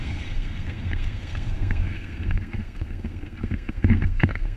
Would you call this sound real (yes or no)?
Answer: no